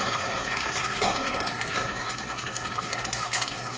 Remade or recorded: remade